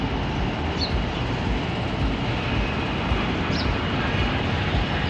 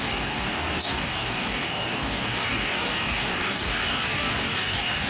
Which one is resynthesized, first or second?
second